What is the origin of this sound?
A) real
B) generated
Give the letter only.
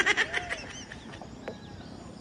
A